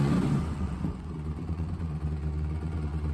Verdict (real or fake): fake